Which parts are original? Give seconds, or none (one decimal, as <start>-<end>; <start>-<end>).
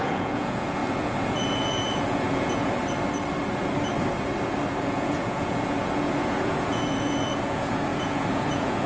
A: 2.8-4.8